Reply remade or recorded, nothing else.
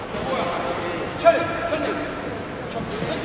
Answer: recorded